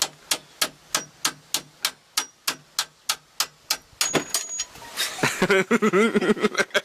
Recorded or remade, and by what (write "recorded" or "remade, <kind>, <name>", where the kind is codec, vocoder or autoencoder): recorded